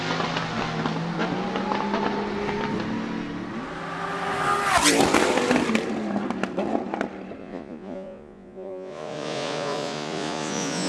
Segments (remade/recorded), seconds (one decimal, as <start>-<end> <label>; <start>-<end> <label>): 0.0-7.4 recorded; 7.4-10.9 remade